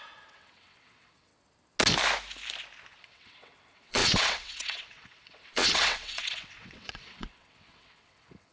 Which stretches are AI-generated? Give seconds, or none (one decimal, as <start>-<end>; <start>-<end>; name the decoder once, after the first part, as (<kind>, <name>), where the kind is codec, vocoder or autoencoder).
0.0-1.3 (vocoder, WaveNeXt); 3.0-8.5